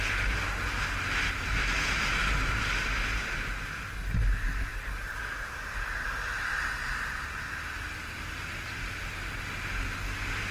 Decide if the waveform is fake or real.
real